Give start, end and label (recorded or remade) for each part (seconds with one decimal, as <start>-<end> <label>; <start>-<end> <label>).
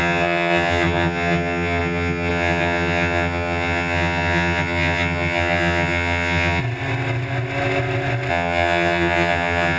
0.0-6.6 remade; 6.6-8.3 recorded; 8.3-9.8 remade